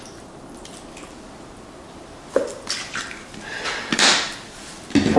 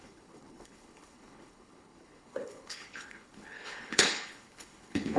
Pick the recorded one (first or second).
first